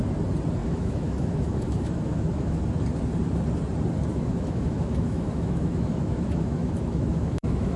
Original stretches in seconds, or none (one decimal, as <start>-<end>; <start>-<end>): 0.0-0.6; 2.6-4.1